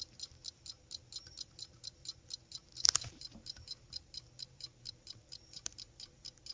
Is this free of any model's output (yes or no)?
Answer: no